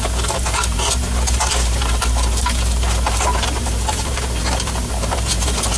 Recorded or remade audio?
remade